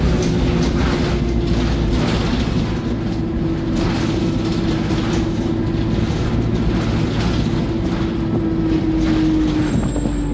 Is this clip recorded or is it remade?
recorded